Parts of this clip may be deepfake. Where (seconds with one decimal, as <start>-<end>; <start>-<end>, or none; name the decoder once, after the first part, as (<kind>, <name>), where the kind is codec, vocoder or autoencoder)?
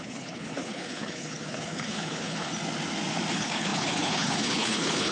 0.0-2.5 (codec, HILCodec); 3.3-5.1